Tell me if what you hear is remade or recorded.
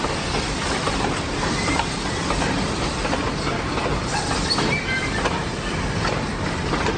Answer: recorded